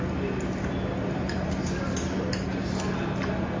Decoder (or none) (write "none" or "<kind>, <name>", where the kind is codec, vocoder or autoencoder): none